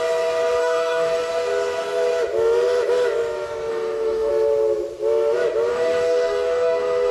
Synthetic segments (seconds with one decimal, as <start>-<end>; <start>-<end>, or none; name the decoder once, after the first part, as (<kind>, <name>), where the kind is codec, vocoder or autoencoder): 0.6-1.3 (codec, DAC); 3.7-4.3; 5.7-7.1